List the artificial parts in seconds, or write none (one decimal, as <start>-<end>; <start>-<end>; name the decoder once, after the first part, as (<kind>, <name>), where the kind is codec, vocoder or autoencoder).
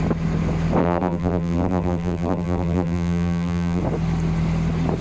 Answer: 0.8-3.8 (vocoder, BigVGAN v2)